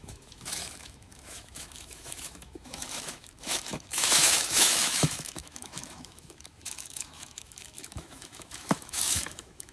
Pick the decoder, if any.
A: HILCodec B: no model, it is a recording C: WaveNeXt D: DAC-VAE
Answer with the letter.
D